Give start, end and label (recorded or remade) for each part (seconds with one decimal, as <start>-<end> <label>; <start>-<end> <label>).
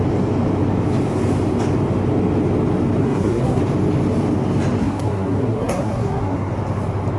0.0-3.0 recorded; 3.0-3.6 remade; 3.6-4.8 recorded; 4.8-6.5 remade; 6.5-7.2 recorded